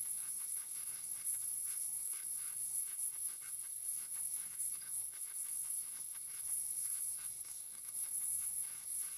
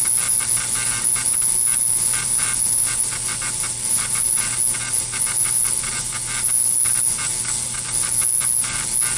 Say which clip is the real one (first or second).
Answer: second